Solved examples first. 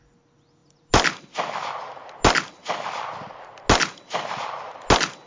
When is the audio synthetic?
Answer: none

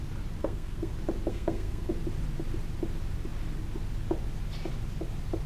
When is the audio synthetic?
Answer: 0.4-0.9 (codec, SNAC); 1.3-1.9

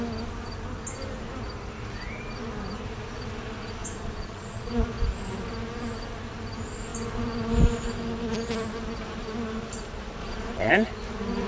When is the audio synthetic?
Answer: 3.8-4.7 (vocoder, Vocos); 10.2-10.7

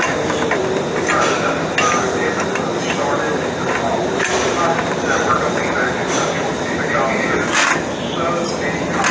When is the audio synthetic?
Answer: 2.7-7.0 (vocoder, BigVGAN v2)